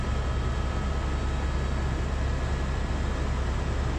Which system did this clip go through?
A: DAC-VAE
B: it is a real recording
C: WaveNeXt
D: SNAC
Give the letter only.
B